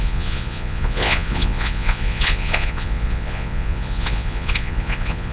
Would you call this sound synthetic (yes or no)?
yes